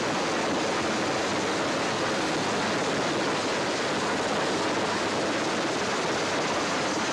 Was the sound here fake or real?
real